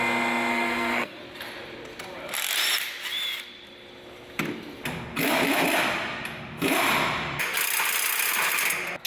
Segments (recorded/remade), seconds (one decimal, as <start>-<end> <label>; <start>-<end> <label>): 0.0-0.5 recorded; 0.5-1.2 remade; 1.2-9.1 recorded